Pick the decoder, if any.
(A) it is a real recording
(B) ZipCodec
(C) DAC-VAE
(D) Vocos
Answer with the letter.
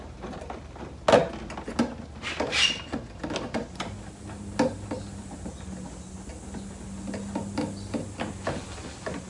A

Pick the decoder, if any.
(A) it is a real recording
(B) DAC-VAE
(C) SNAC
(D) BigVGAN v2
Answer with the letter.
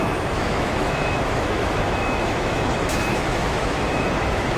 B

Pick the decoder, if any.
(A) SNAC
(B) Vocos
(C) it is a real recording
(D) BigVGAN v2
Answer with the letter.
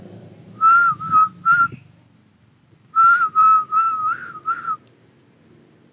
D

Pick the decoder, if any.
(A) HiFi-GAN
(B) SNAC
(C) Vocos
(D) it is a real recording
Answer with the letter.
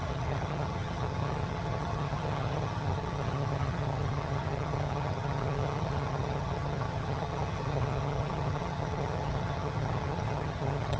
A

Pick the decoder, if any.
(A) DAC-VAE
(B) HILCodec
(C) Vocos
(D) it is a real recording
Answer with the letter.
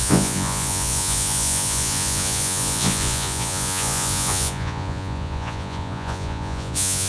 C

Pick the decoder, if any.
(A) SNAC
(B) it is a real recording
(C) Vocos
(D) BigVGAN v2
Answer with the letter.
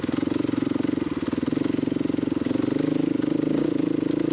B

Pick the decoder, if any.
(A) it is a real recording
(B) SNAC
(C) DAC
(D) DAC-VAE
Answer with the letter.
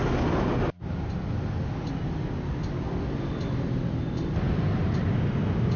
A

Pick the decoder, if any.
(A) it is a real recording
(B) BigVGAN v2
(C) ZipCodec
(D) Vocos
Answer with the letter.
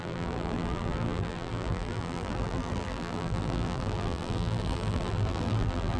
B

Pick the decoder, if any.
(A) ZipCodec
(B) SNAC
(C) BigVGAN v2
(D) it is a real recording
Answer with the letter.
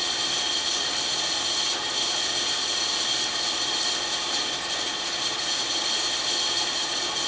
D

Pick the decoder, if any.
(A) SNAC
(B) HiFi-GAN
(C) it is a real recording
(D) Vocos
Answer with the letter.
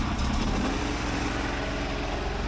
C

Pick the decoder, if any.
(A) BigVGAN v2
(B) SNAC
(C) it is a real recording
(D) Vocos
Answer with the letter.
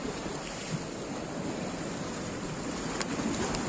C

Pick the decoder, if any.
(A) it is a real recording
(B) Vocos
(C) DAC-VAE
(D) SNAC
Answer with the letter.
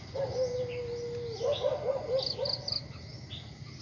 A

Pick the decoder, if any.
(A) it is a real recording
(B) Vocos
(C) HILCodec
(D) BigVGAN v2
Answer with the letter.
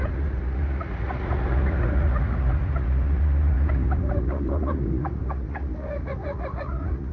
B